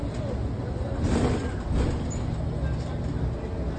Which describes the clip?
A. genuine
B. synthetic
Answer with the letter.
A